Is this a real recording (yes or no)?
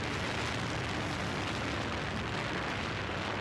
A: yes